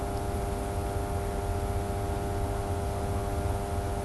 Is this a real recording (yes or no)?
yes